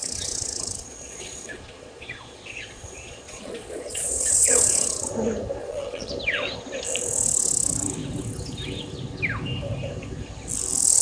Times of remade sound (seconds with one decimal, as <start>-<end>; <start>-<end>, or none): 0.0-5.1; 5.6-6.1